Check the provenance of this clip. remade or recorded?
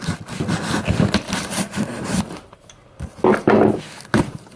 recorded